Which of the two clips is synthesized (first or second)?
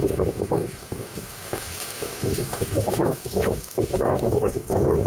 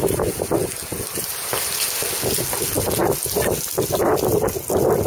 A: first